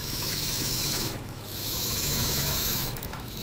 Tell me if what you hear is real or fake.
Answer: fake